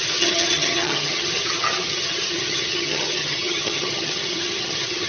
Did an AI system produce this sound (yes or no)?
yes